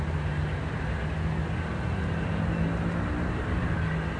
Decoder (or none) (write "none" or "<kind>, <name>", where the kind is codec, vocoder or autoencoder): none